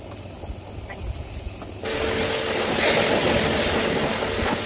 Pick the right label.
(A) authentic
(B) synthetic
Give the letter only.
A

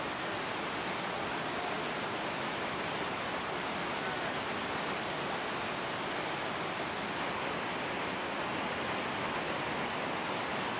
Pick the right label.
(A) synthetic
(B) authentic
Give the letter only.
B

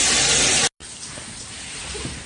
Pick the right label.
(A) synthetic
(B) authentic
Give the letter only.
B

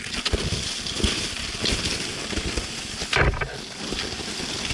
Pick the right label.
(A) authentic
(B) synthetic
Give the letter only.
A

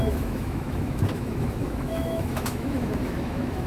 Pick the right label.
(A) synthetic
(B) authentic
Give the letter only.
A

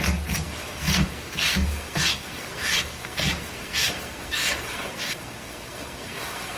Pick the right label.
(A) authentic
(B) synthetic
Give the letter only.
B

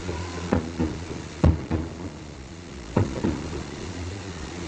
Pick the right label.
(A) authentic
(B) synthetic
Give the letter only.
B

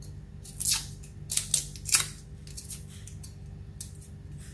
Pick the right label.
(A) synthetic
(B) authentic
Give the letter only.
B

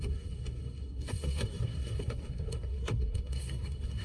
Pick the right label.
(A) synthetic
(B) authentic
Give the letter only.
A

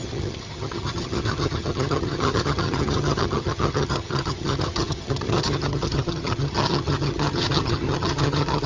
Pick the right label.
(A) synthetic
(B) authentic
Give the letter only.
A